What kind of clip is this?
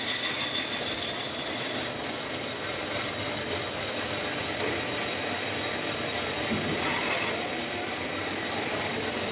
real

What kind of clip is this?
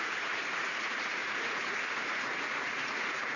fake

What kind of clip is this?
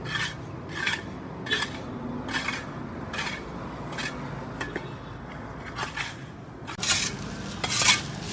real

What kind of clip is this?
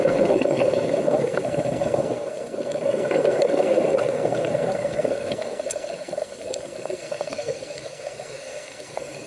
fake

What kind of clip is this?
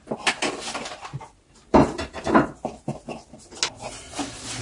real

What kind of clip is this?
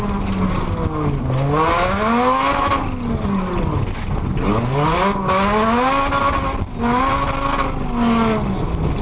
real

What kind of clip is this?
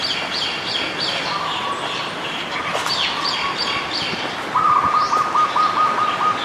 real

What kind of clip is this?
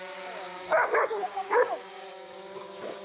fake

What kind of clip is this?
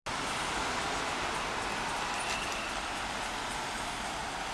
real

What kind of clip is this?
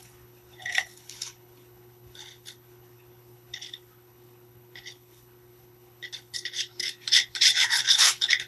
fake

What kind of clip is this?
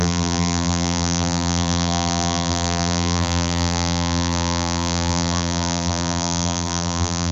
fake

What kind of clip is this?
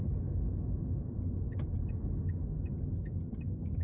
real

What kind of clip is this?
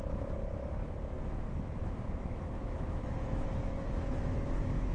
fake